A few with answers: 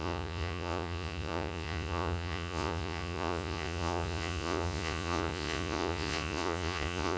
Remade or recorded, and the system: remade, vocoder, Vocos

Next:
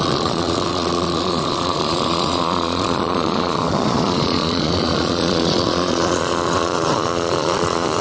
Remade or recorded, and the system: remade, vocoder, Vocos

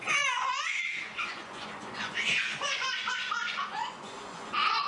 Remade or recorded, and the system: remade, vocoder, Vocos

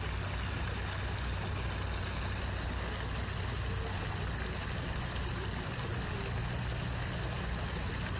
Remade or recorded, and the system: recorded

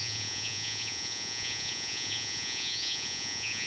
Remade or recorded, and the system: remade, vocoder, Vocos